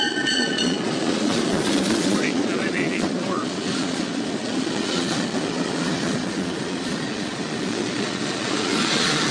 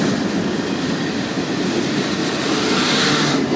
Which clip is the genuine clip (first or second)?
second